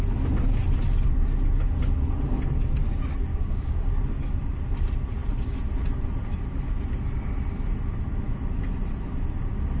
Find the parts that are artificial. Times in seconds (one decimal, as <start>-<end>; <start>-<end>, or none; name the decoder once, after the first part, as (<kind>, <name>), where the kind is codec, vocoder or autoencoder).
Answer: 3.3-3.8 (codec, DAC)